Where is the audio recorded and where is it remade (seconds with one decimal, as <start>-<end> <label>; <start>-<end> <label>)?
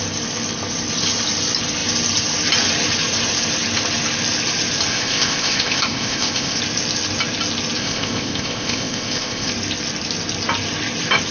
0.0-4.9 recorded; 4.9-6.6 remade; 6.6-7.8 recorded; 7.8-9.5 remade; 9.5-11.3 recorded